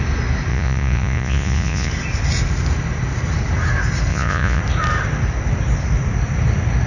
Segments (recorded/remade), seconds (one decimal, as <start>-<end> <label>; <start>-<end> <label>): 0.0-0.5 recorded; 0.5-1.9 remade; 1.9-4.1 recorded; 4.1-4.6 remade; 4.6-6.9 recorded